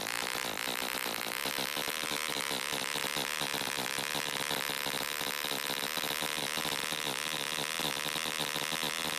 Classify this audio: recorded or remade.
recorded